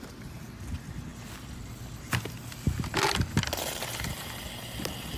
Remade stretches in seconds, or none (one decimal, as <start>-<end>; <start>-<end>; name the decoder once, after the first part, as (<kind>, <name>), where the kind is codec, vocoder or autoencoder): none